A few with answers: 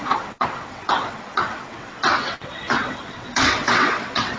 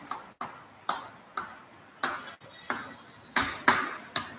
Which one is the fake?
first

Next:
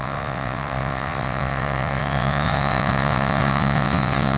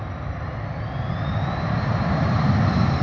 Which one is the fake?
first